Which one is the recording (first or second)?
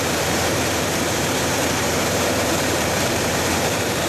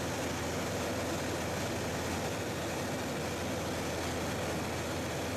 second